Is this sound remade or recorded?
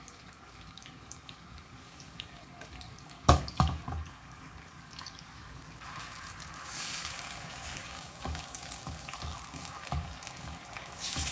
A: remade